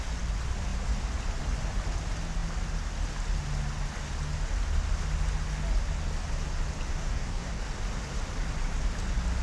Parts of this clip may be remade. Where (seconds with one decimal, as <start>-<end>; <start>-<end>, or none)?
6.9-7.6